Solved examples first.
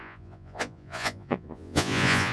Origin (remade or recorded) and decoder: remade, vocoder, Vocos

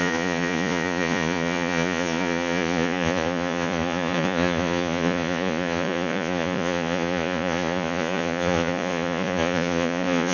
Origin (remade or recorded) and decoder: remade, vocoder, Vocos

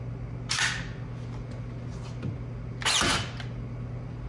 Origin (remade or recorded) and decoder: recorded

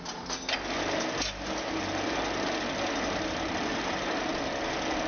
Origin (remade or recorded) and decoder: recorded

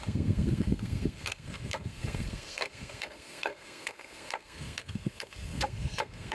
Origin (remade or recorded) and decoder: remade, codec, SNAC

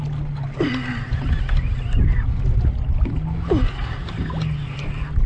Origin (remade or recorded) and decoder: recorded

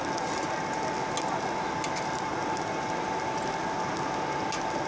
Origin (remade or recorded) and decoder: recorded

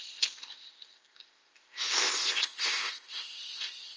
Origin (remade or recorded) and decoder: remade, codec, ZipCodec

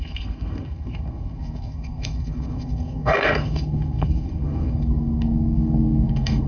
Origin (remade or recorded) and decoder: remade, codec, SNAC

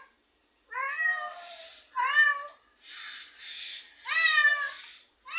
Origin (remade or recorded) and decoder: recorded